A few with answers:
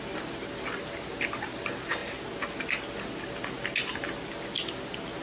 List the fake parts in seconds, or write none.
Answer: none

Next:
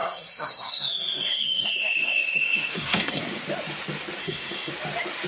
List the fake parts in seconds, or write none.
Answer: 0.0-3.2; 4.2-4.7

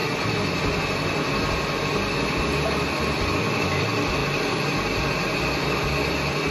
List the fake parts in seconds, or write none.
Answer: none

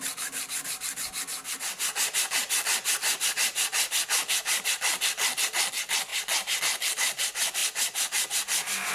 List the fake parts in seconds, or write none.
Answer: none

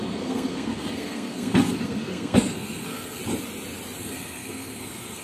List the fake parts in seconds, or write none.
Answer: 0.0-3.2; 4.0-5.2